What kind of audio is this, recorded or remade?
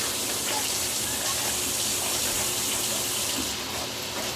recorded